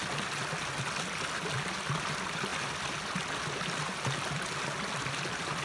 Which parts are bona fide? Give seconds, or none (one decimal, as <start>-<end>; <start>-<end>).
0.0-5.6